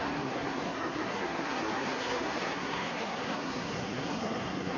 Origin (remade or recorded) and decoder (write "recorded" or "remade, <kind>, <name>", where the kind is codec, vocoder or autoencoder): remade, codec, SNAC